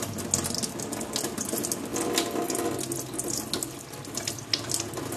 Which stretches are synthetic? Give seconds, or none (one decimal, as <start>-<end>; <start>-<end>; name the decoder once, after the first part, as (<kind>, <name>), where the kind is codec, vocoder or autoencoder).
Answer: none